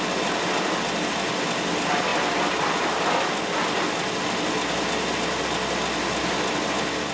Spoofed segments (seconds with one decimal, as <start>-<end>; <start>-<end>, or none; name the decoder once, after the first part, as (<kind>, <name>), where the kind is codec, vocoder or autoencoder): none